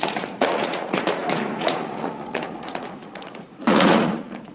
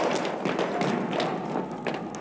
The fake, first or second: first